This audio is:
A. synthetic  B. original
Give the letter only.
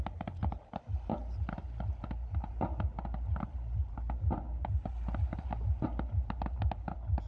B